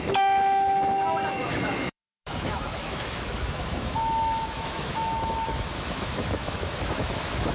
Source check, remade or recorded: remade